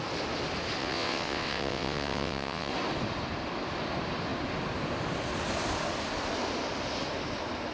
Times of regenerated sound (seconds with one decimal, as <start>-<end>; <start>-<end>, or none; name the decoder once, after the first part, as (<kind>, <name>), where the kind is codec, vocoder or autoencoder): 0.8-2.7 (vocoder, WaveNeXt)